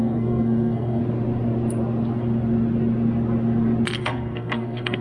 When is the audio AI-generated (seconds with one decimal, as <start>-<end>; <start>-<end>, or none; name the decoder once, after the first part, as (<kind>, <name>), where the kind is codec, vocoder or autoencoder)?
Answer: 0.0-1.0 (codec, SNAC); 4.0-5.0